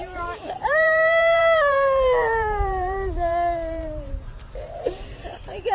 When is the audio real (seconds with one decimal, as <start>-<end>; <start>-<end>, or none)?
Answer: none